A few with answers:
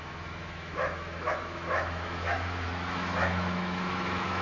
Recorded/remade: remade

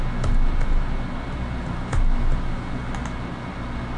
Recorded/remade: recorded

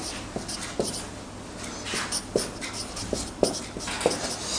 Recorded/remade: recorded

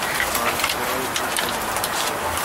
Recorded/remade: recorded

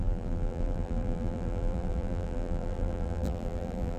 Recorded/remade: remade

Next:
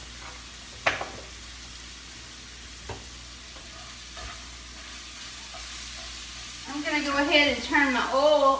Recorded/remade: recorded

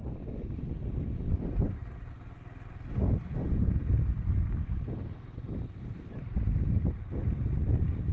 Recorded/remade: recorded